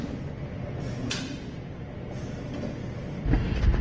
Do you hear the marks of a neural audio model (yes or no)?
no